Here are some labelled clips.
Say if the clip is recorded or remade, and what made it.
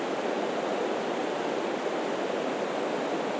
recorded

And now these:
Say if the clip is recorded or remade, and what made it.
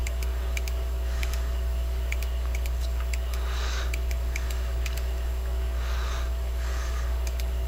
remade, codec, DAC